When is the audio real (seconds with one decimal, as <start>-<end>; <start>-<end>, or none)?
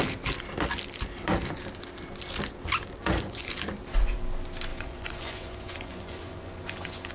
0.0-3.0; 3.5-4.7